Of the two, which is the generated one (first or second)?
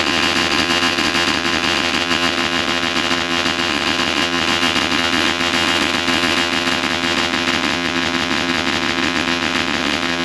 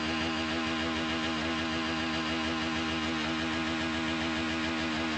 first